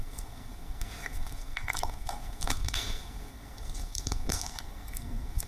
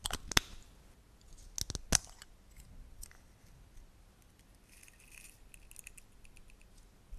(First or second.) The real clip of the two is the second